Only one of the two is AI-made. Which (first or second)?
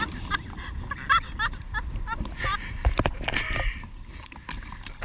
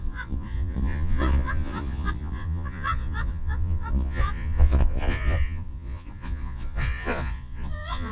second